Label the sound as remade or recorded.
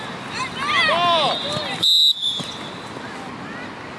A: recorded